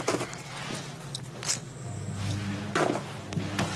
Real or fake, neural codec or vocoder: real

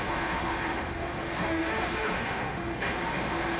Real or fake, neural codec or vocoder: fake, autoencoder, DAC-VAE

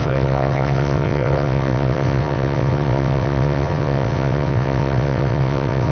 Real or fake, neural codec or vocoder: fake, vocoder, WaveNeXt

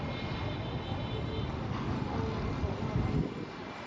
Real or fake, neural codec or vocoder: real